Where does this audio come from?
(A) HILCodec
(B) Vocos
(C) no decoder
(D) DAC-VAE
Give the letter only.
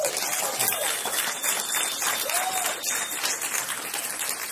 C